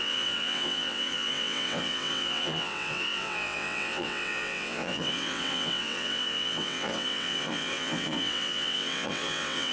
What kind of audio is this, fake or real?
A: fake